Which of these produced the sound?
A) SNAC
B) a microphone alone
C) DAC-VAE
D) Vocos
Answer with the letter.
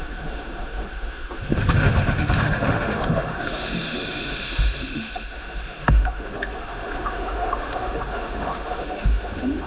C